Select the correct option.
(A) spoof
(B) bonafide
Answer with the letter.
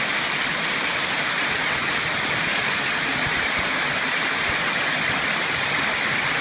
B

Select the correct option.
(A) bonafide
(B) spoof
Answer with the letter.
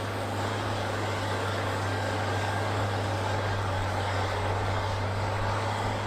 B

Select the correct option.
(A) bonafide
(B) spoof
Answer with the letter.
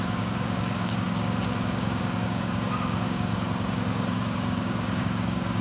B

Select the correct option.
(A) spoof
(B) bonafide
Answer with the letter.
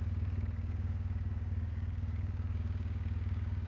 A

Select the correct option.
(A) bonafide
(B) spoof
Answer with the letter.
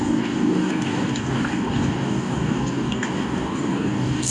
B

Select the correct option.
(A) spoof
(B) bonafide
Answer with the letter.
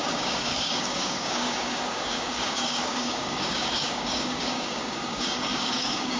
A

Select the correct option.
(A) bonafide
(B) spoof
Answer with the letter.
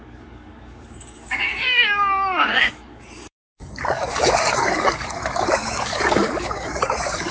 B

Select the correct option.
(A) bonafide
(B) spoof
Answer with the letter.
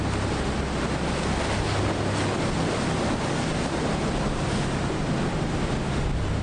A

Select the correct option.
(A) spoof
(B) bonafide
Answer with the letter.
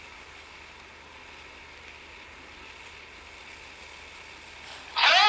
B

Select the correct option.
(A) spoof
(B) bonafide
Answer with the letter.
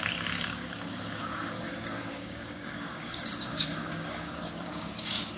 A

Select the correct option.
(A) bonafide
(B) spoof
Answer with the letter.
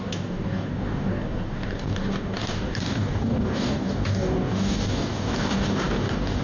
B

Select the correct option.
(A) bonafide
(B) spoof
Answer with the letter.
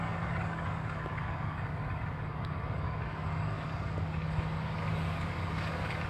B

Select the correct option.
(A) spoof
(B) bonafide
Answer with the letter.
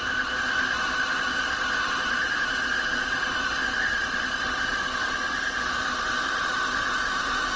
B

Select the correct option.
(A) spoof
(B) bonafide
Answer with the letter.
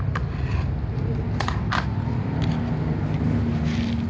B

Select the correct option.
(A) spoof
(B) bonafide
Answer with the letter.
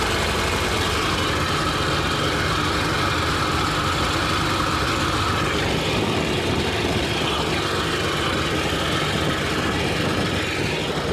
B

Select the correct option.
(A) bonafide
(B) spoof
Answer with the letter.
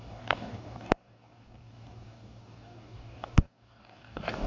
B